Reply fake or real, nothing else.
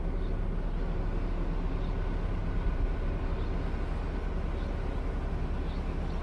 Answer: real